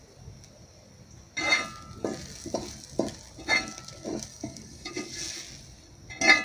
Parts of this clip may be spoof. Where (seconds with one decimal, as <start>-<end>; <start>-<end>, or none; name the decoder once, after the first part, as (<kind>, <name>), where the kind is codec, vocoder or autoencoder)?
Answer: 4.3-4.9 (codec, DAC)